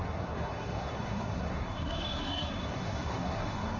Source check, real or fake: fake